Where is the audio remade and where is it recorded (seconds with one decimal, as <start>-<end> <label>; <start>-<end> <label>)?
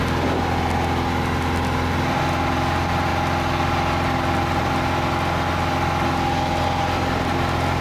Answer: 0.0-7.8 recorded